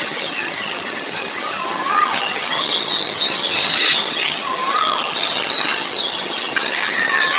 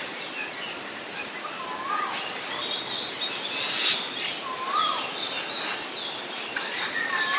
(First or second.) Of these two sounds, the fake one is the first